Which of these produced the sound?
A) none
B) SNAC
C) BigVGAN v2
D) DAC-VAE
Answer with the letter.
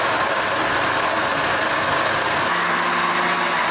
A